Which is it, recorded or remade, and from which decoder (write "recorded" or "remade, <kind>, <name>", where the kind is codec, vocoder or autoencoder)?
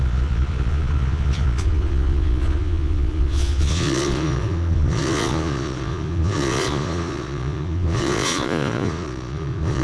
remade, vocoder, Vocos